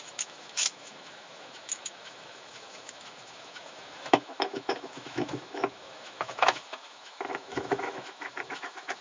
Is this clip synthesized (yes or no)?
yes